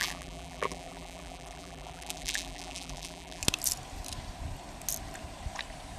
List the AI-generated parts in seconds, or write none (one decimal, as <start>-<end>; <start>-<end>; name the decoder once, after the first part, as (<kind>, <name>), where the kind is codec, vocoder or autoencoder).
0.0-3.4 (vocoder, BigVGAN v2)